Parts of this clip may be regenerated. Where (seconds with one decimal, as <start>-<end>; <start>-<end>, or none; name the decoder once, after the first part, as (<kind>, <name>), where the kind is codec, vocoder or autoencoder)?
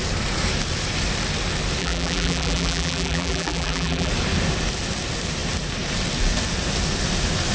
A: 1.8-4.1 (vocoder, BigVGAN v2)